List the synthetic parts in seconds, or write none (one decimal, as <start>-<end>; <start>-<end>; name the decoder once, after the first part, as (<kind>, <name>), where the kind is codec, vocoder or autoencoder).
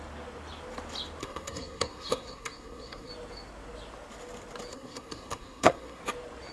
1.2-3.1 (codec, SNAC); 4.7-6.0